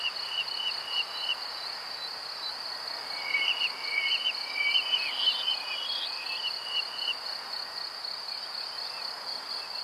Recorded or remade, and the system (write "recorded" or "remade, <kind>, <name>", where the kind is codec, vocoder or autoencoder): recorded